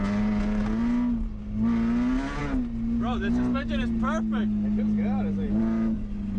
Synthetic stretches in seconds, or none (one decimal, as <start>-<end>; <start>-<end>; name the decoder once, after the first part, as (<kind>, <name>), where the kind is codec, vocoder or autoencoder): none